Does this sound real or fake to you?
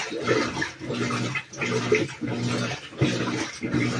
real